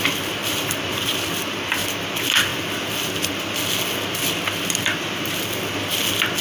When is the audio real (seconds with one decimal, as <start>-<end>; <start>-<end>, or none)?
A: 0.0-0.4; 1.8-2.5; 3.4-6.4